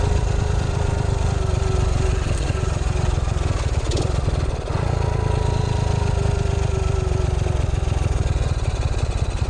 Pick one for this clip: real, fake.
real